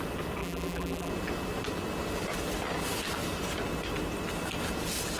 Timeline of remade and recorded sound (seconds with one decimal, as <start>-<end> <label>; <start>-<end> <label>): 0.0-0.4 recorded; 0.4-1.1 remade; 1.1-5.2 recorded